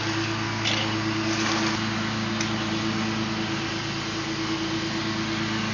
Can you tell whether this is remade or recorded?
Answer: recorded